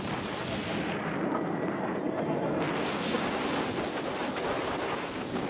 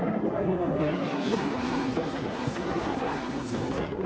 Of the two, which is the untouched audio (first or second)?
first